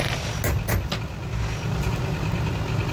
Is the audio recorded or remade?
recorded